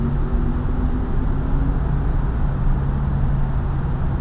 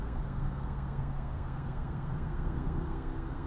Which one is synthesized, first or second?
second